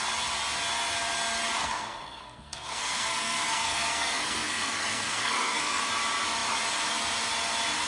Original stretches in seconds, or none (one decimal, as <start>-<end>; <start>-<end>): 0.0-1.6; 5.8-7.9